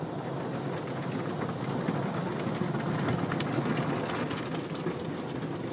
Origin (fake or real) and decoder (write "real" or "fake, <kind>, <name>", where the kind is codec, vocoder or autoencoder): real